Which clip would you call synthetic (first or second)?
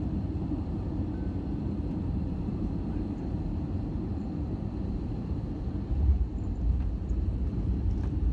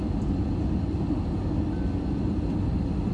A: first